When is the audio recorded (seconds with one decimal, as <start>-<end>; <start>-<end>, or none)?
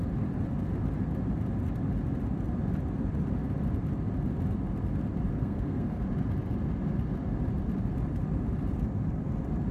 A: 0.0-5.3; 6.0-9.7